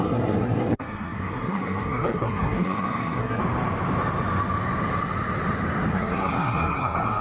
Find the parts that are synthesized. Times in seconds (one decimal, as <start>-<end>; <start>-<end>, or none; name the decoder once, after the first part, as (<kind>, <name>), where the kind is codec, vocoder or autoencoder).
0.0-3.4 (codec, SNAC); 5.9-7.2